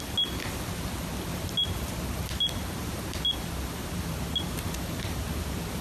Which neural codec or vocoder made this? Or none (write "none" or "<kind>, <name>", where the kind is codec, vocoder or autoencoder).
none